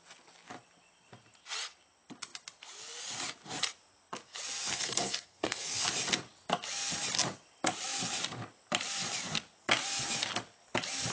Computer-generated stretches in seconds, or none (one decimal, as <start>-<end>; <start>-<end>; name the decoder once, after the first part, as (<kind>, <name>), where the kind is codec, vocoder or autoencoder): 4.7-5.8 (codec, SNAC)

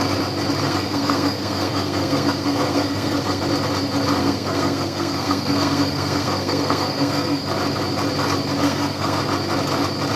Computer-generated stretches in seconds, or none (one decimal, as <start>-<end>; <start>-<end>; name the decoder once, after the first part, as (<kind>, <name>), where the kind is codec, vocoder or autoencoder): 0.6-3.4 (codec, SNAC); 4.2-7.4; 8.6-9.2

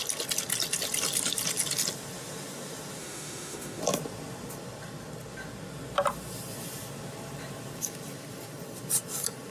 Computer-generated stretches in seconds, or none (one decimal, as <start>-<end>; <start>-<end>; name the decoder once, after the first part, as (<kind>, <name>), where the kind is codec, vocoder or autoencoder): 3.0-3.8 (autoencoder, DAC-VAE)

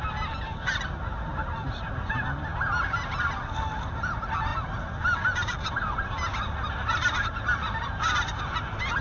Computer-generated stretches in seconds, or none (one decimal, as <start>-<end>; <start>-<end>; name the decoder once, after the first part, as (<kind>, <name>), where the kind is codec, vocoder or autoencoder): none